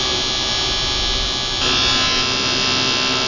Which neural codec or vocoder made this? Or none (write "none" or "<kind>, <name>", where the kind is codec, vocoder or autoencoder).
none